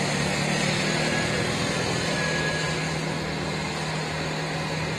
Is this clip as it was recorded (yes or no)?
yes